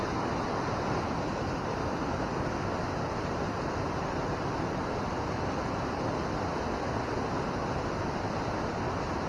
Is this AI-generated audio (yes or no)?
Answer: no